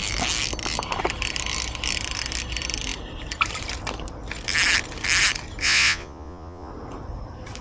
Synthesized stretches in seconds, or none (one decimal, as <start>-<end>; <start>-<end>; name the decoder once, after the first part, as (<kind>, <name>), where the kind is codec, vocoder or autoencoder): 5.6-6.7 (vocoder, Vocos)